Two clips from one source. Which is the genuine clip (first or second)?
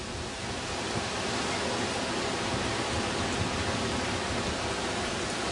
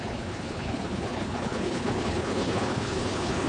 first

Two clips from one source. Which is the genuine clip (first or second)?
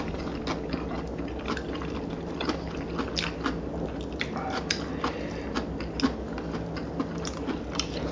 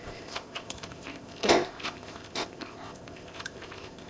first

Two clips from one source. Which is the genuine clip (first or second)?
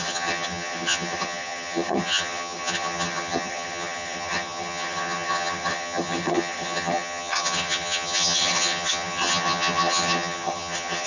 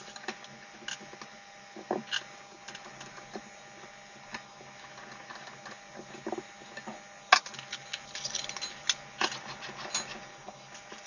second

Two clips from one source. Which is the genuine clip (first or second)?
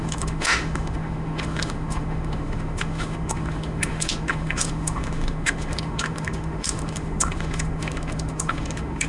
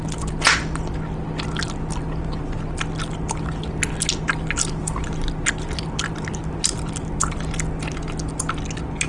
second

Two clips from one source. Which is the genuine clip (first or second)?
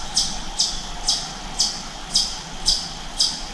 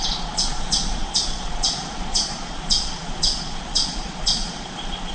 first